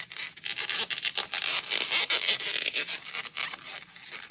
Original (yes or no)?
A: yes